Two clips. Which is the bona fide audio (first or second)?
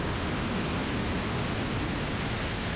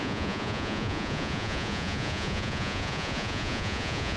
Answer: first